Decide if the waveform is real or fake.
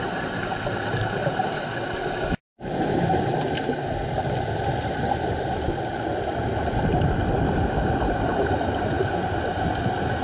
real